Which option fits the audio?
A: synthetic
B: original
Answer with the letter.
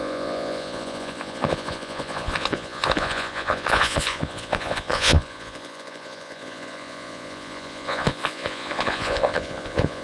A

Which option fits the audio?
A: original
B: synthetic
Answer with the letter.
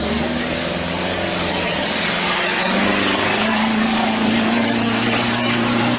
B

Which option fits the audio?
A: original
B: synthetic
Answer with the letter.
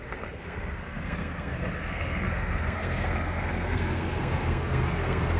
B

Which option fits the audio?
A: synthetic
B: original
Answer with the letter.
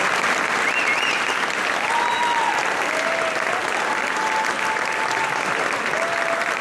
B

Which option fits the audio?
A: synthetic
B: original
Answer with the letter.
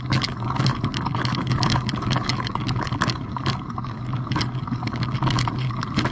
A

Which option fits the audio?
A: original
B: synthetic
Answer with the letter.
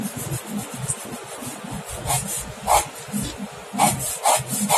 A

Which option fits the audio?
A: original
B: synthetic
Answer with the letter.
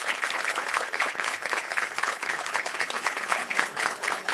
B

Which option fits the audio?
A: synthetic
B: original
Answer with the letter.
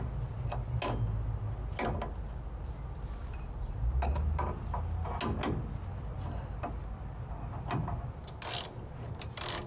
B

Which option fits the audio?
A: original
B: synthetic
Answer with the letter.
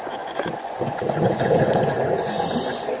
B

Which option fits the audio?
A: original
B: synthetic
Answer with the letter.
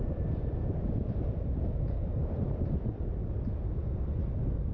A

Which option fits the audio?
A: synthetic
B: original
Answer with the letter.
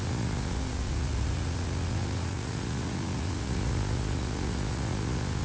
A